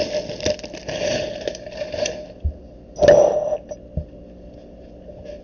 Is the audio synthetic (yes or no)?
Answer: no